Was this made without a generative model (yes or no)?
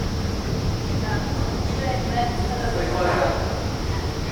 yes